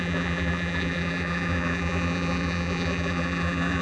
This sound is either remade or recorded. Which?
remade